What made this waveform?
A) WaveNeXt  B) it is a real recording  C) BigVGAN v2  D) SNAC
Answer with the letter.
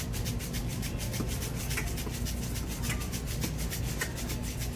B